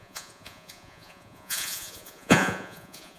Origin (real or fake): fake